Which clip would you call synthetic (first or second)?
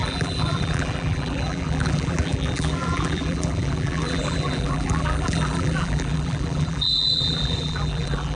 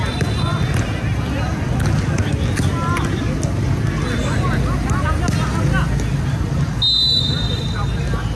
first